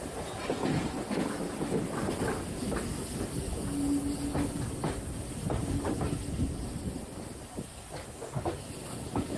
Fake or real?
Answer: real